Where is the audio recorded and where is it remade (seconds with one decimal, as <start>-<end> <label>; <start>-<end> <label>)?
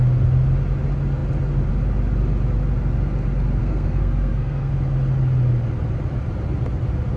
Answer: 0.0-3.6 recorded; 3.6-4.7 remade; 4.7-7.2 recorded